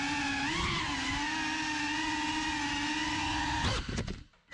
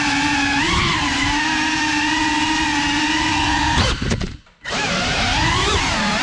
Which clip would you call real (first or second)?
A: first